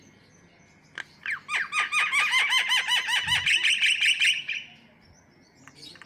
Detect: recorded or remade recorded